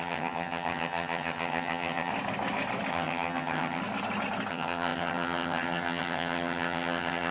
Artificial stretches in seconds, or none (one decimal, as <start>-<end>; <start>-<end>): 0.0-2.1; 2.9-3.8; 4.5-7.3